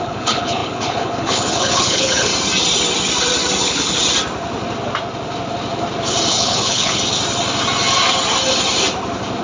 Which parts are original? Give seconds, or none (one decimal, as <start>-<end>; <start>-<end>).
2.3-3.6; 4.0-6.3; 7.0-9.4